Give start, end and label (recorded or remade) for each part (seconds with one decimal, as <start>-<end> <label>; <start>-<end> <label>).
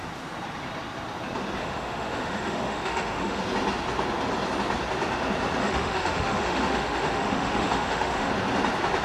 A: 0.0-1.6 recorded; 1.6-3.4 remade; 3.4-5.6 recorded; 5.6-8.3 remade; 8.3-9.0 recorded